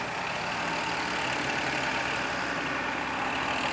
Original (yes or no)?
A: yes